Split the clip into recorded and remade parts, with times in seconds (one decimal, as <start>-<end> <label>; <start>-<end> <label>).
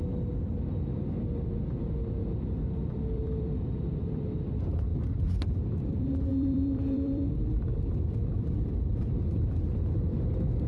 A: 0.0-2.2 recorded; 2.2-4.5 remade; 4.5-6.3 recorded; 6.3-9.2 remade; 9.2-10.7 recorded